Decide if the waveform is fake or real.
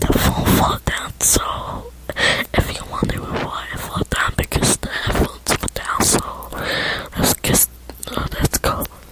real